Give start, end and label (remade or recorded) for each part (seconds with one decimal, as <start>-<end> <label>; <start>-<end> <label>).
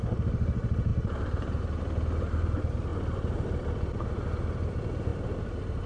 0.0-5.9 remade